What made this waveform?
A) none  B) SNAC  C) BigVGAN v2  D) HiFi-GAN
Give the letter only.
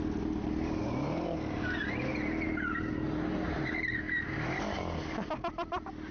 A